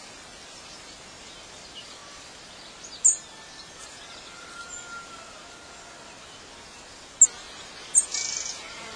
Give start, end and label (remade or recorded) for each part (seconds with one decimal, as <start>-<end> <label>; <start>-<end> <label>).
0.0-9.0 recorded